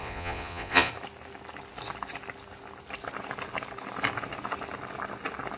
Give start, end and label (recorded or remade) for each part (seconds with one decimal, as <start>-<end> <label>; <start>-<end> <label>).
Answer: 0.0-0.9 remade; 0.9-5.6 recorded